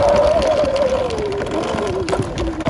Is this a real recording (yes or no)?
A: yes